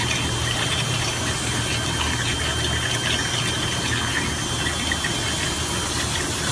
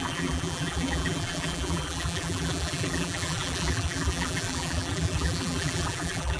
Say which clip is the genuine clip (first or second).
first